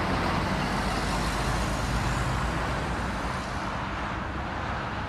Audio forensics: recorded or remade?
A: recorded